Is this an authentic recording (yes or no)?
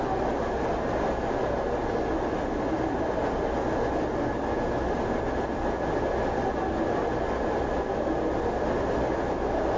yes